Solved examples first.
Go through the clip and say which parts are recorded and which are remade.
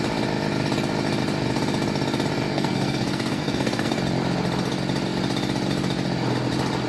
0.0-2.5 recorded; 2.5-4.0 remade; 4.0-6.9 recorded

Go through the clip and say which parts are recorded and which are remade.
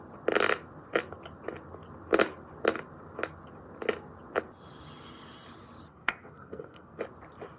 0.0-5.9 recorded; 5.9-7.0 remade; 7.0-7.6 recorded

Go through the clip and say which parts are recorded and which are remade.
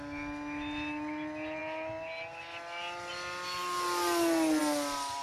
0.0-5.2 recorded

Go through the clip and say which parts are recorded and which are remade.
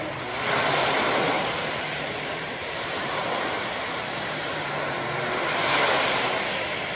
0.0-0.8 recorded; 0.8-5.0 remade; 5.0-7.0 recorded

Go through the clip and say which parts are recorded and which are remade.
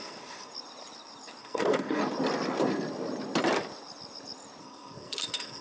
0.0-0.5 remade; 0.5-1.4 recorded; 1.4-2.0 remade; 2.0-4.6 recorded; 4.6-5.6 remade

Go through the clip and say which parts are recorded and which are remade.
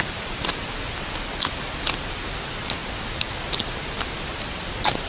0.0-5.1 recorded